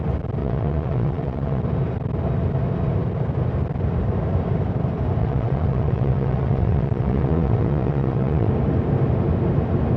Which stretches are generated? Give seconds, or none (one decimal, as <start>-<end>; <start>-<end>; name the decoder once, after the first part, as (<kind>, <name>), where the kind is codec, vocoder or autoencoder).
0.4-1.6 (vocoder, WaveNeXt); 5.2-8.5